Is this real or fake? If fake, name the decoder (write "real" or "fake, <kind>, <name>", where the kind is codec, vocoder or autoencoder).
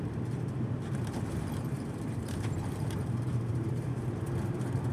fake, vocoder, BigVGAN v2